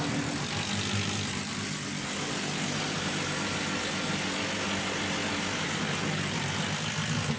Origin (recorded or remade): recorded